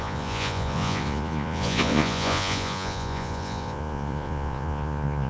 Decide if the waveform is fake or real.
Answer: fake